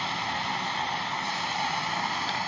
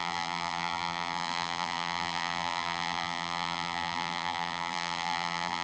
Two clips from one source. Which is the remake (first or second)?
second